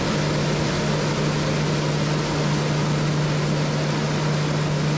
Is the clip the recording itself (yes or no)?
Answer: yes